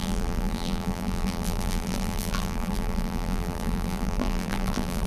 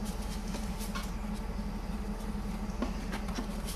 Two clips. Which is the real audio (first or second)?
second